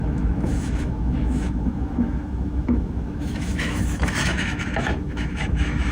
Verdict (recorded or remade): remade